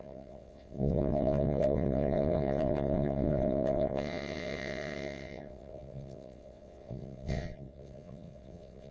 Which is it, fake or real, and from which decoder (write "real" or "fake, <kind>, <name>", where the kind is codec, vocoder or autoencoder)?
fake, vocoder, WaveNeXt